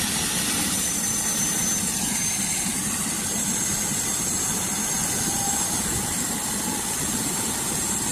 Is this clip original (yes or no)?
yes